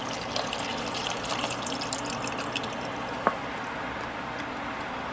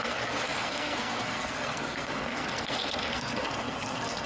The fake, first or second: second